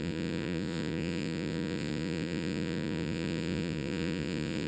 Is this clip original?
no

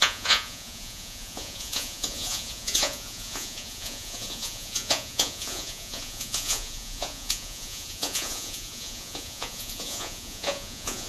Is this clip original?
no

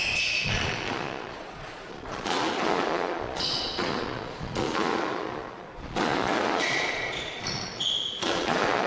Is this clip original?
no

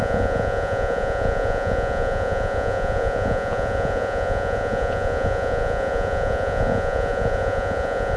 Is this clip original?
no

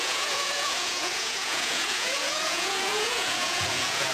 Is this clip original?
no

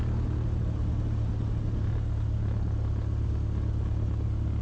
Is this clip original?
yes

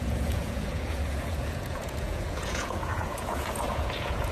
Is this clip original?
no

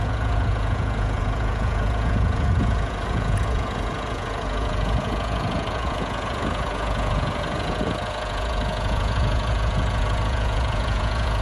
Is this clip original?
no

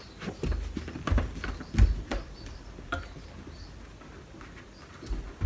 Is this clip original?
yes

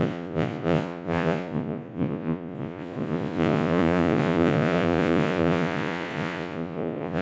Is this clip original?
no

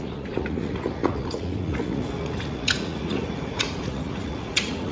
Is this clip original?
no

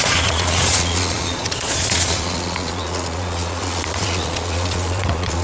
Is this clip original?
no